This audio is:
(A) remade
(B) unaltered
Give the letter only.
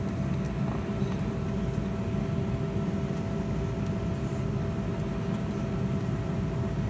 B